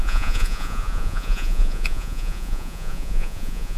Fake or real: fake